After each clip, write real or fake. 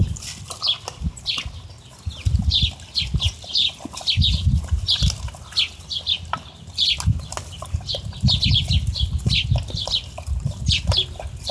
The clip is real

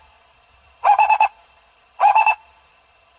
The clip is fake